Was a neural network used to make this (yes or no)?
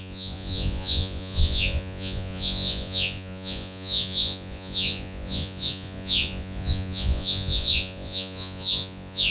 yes